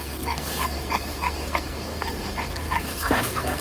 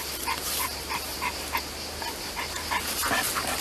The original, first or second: second